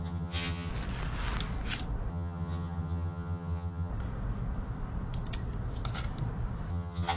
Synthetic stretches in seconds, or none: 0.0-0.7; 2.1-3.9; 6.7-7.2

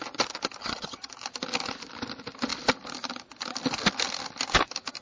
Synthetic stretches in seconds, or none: 0.6-1.1

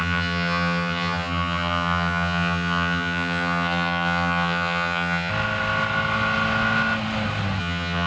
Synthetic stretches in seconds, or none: 0.0-5.3; 7.6-8.1

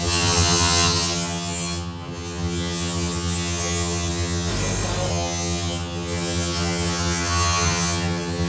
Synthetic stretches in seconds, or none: 0.0-4.5; 5.1-8.5

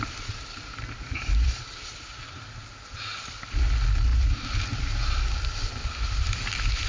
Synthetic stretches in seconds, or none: none

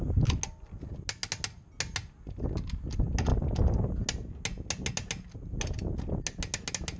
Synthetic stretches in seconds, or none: none

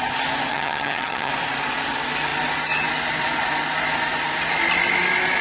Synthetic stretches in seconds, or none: 0.5-1.3

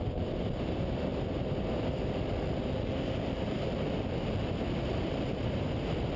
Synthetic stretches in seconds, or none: none